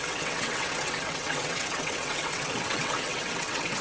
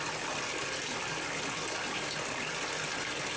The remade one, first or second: first